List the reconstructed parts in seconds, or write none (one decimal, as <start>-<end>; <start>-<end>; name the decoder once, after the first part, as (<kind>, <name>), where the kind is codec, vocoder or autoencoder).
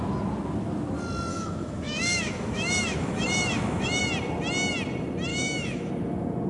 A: 1.3-4.0 (autoencoder, DAC-VAE); 5.3-5.9